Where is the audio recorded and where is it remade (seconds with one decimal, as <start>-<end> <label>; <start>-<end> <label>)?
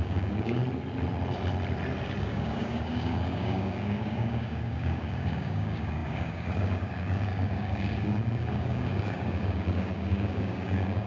0.0-0.6 remade; 0.6-2.2 recorded; 2.2-11.1 remade